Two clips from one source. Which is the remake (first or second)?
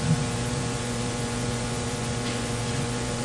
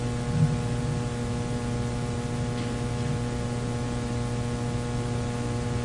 first